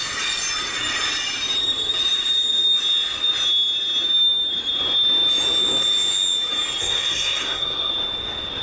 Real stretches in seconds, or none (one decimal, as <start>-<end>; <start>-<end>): 0.0-6.8; 7.9-8.6